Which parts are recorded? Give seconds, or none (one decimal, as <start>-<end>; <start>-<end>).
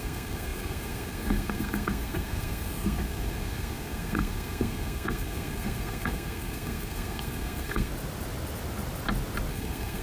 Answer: 7.9-9.5